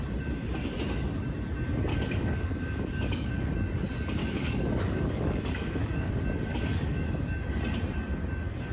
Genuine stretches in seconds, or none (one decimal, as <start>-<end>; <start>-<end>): 0.0-1.9; 3.3-4.2; 6.1-6.5; 7.4-8.7